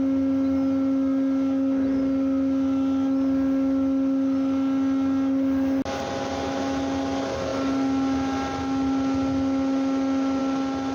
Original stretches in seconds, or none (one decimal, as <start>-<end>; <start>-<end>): 0.0-10.9